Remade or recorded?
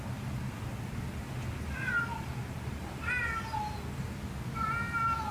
recorded